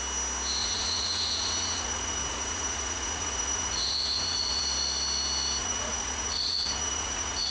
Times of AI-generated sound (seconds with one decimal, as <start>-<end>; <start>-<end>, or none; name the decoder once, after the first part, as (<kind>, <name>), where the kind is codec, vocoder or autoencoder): 0.6-4.6 (vocoder, Vocos); 5.6-7.5